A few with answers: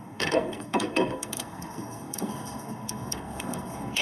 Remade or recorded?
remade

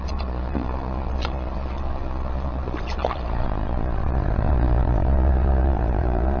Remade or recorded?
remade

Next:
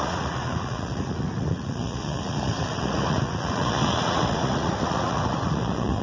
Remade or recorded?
remade